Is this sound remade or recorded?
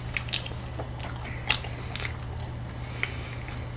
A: recorded